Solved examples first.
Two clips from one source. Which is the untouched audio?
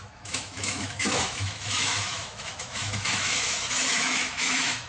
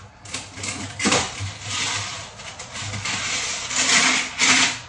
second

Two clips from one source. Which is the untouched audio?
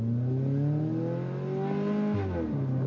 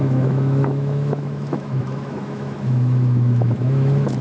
first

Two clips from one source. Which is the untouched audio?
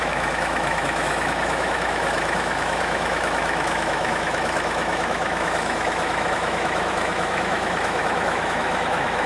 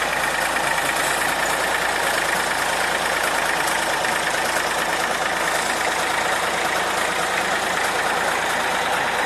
second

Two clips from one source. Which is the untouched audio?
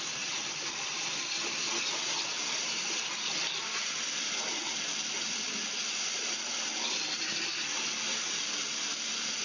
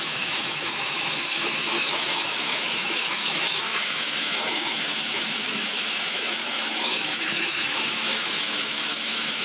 first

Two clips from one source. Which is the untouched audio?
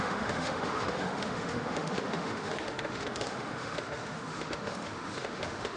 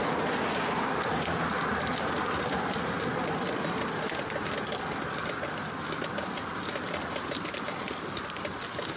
second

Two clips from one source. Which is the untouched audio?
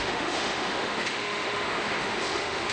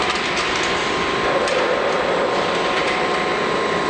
second